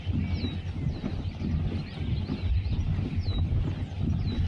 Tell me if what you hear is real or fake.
real